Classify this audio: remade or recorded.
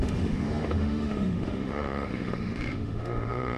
remade